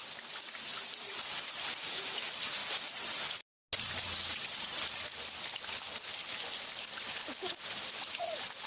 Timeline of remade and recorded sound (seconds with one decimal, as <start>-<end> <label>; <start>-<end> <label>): 0.0-8.7 recorded